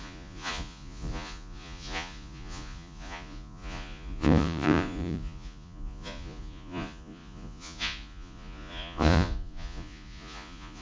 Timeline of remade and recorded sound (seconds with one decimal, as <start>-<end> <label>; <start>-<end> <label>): 0.0-10.8 remade